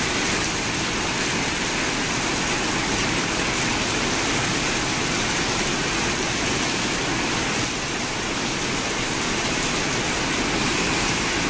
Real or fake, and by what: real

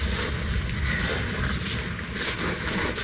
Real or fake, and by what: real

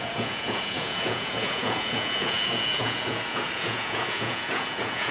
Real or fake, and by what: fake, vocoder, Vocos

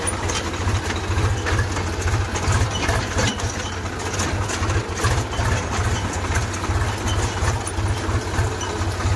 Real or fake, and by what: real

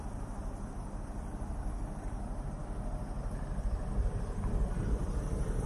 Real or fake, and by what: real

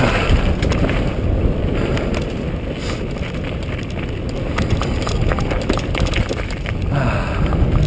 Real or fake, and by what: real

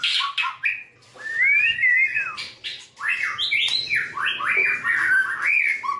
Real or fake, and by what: real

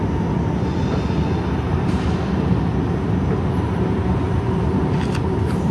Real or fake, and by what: real